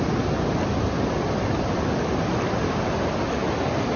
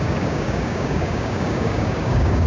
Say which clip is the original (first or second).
first